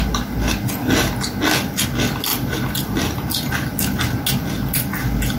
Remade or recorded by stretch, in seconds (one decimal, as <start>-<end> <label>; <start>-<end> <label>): 0.0-2.3 recorded; 2.3-3.5 remade; 3.5-5.4 recorded

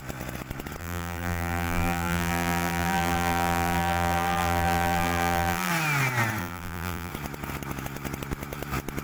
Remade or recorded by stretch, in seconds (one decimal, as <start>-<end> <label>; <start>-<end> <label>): 0.0-0.8 recorded; 0.8-5.7 remade; 5.7-6.4 recorded; 6.4-7.1 remade; 7.1-9.0 recorded

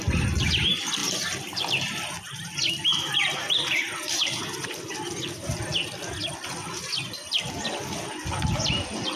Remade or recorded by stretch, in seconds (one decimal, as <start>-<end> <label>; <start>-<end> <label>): 0.0-1.0 recorded; 1.0-2.5 remade; 2.5-2.9 recorded; 2.9-5.6 remade; 5.6-9.2 recorded

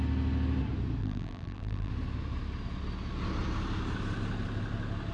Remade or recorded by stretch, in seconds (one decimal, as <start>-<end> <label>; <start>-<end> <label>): 0.0-1.0 recorded; 1.0-1.9 remade; 1.9-5.1 recorded

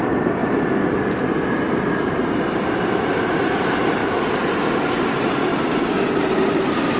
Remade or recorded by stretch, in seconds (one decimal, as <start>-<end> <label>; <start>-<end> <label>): 0.0-0.4 remade; 0.4-2.3 recorded; 2.3-4.0 remade; 4.0-5.0 recorded; 5.0-5.5 remade; 5.5-6.2 recorded; 6.2-7.0 remade

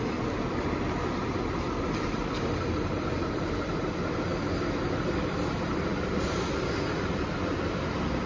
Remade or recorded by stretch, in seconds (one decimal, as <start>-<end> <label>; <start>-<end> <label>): 0.0-1.2 recorded; 1.2-3.8 remade; 3.8-8.3 recorded